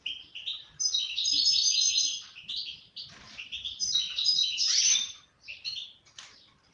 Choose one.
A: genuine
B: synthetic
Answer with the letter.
B